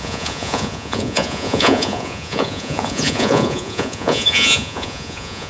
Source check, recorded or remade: remade